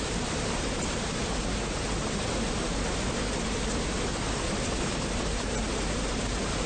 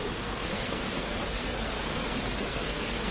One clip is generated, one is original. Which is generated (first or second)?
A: second